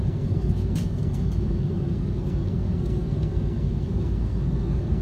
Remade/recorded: remade